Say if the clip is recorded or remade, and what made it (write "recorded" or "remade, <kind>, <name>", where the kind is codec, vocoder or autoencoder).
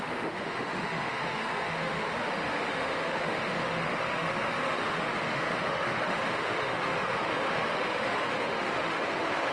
remade, autoencoder, DAC-VAE